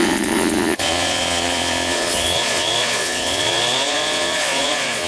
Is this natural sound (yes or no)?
no